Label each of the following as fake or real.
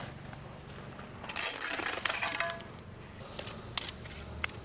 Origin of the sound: real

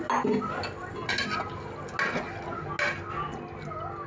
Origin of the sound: real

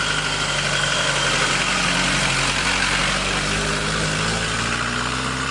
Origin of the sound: real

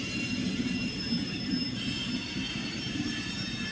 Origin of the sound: fake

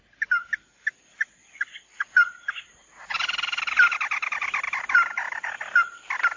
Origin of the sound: real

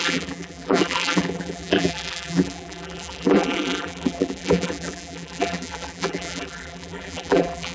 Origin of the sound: fake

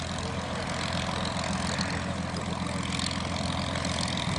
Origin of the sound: real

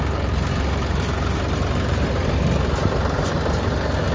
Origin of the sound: real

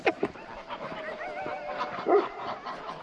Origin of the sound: fake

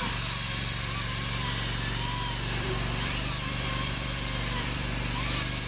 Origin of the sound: fake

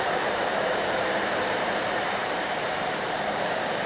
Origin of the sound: fake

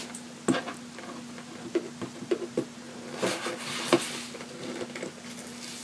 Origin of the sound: real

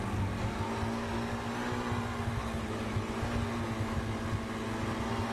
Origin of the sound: real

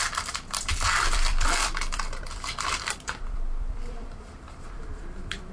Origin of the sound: fake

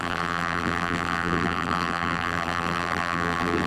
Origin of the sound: fake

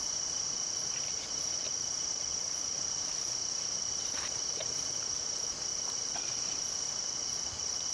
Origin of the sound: fake